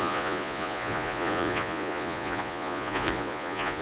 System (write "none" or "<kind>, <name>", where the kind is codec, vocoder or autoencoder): vocoder, Vocos